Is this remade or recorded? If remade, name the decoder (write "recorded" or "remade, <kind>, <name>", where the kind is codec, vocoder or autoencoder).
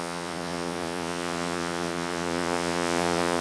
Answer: remade, vocoder, Vocos